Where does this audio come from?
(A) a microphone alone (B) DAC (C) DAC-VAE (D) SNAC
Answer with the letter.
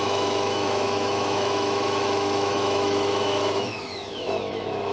C